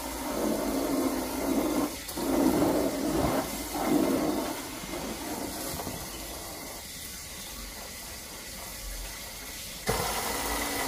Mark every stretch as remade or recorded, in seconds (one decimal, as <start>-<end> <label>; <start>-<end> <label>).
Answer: 0.0-10.9 recorded